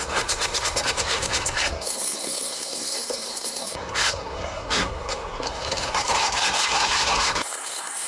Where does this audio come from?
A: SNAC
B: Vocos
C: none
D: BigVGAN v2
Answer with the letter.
A